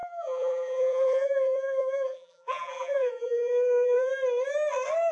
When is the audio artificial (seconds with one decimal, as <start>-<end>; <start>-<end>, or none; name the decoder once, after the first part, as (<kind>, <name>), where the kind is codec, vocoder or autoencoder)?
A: 0.0-4.1 (vocoder, BigVGAN v2)